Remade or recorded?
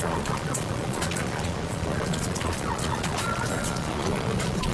remade